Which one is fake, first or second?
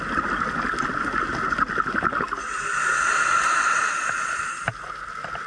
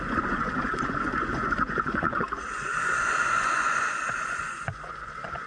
second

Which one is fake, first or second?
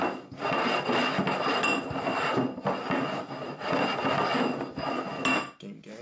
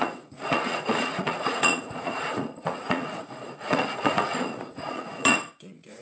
second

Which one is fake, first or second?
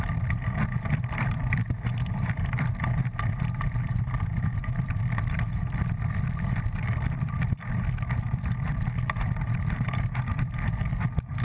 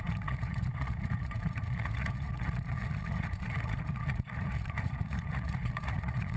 second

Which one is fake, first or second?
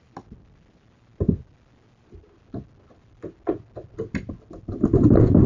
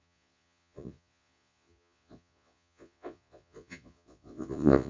second